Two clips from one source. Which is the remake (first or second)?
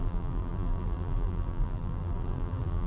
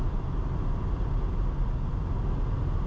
first